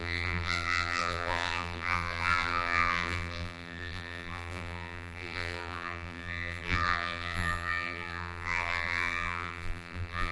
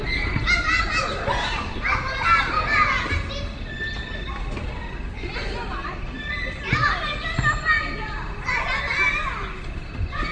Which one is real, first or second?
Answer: second